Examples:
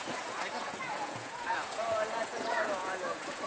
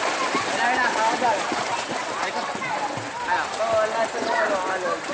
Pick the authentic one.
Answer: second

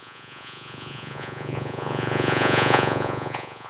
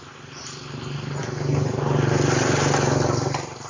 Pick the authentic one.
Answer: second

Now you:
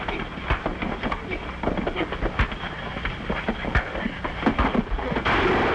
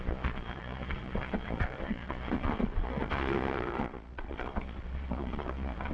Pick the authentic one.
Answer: first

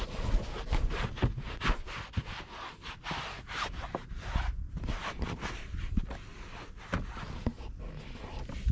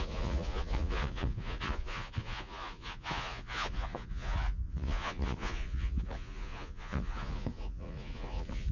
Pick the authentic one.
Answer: first